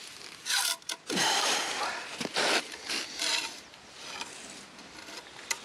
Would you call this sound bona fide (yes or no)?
no